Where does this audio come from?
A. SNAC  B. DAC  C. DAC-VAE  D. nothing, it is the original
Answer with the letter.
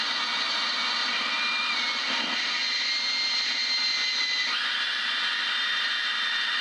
D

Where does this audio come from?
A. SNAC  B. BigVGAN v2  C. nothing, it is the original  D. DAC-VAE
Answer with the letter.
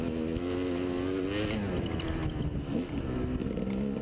C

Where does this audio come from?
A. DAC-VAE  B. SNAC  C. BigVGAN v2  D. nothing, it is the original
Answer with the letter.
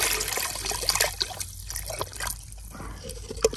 D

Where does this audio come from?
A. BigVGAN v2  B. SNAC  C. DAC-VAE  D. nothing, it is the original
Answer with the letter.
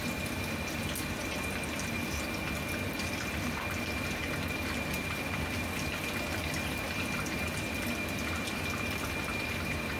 D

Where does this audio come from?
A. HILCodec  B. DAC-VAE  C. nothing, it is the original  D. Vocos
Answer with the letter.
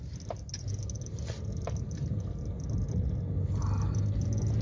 C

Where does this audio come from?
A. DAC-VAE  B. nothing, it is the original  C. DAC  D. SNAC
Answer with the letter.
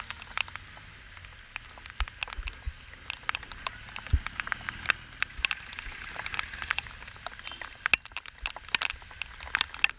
B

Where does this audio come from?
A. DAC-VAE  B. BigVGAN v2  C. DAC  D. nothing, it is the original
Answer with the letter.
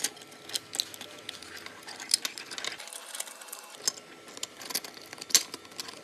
D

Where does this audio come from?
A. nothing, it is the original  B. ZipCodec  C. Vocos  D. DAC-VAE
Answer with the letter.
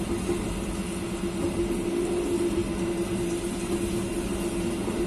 A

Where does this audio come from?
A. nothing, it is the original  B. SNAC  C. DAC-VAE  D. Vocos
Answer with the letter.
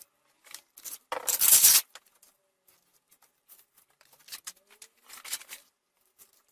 A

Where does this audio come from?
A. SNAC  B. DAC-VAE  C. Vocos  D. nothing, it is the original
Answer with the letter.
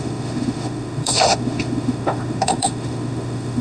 B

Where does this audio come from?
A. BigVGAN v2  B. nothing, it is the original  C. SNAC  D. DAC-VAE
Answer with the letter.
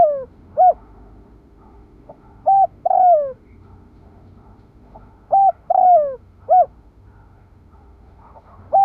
D